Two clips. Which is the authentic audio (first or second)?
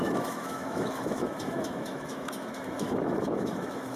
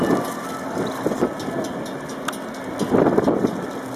second